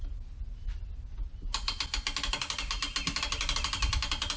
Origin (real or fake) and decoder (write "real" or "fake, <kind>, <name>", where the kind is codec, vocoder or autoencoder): real